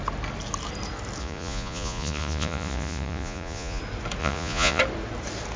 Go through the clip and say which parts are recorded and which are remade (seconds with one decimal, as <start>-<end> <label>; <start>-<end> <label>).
0.0-1.2 recorded; 1.2-3.8 remade; 3.8-4.2 recorded; 4.2-4.8 remade; 4.8-5.6 recorded